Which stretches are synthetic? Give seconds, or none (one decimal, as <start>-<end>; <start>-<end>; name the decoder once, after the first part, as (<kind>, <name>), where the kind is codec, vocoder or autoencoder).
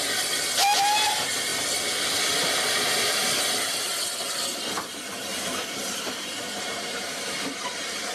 1.5-2.3 (vocoder, BigVGAN v2); 3.2-3.9; 5.3-8.1